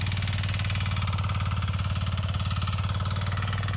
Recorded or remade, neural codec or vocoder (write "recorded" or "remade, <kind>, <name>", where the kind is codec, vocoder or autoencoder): recorded